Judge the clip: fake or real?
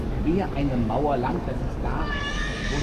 fake